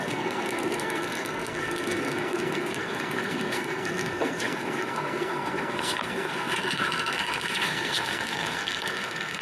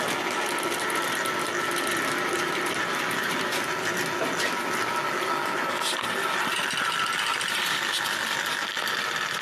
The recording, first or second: second